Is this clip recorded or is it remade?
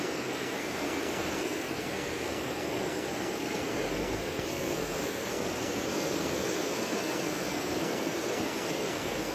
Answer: remade